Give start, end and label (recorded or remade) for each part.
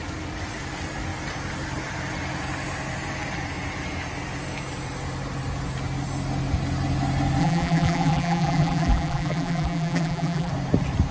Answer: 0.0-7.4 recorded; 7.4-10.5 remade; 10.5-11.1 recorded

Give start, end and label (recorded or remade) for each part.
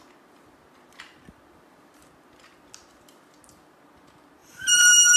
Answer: 0.0-4.4 recorded; 4.4-5.2 remade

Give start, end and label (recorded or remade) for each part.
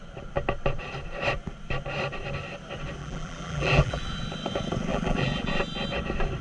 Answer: 0.0-3.0 recorded; 3.0-4.0 remade; 4.0-4.9 recorded; 4.9-5.5 remade; 5.5-6.4 recorded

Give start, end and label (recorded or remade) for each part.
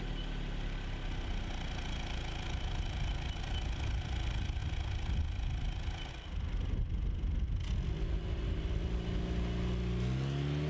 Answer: 0.0-10.7 recorded